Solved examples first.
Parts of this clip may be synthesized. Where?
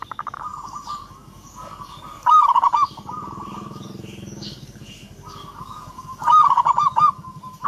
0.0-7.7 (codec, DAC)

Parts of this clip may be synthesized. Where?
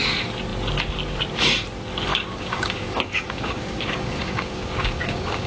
2.1-5.5 (codec, DAC)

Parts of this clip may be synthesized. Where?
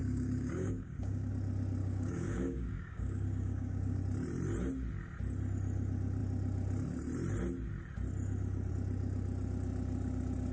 0.0-1.3 (codec, DAC); 1.8-4.0